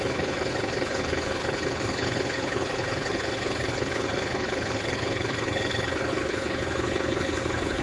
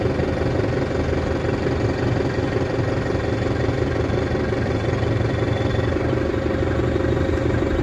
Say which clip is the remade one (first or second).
first